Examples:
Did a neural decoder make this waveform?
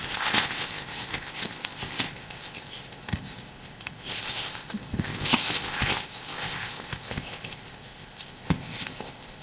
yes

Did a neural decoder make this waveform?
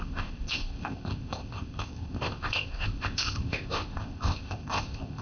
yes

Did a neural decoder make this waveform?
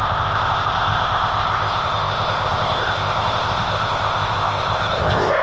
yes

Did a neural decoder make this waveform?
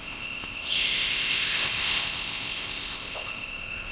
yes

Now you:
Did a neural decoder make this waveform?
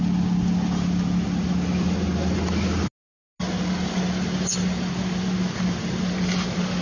no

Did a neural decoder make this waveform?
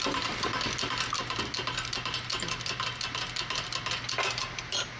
no